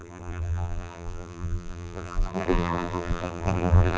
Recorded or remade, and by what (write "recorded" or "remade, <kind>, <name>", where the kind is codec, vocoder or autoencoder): remade, vocoder, BigVGAN v2